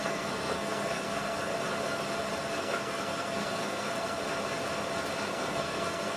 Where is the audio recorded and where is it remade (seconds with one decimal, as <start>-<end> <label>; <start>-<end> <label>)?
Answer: 0.0-1.5 remade; 1.5-2.6 recorded; 2.6-4.2 remade; 4.2-5.2 recorded; 5.2-6.2 remade